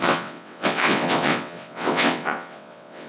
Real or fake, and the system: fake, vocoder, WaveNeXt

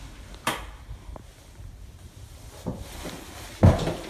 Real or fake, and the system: real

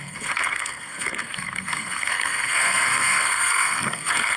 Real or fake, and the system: fake, codec, SNAC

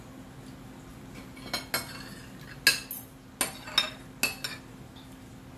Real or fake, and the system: real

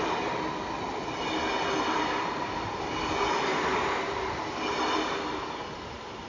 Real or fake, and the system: real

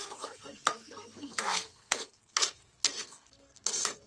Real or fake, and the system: fake, codec, SNAC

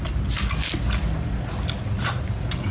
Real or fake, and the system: real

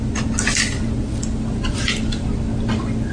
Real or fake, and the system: real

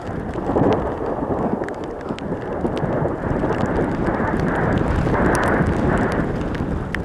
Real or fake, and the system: real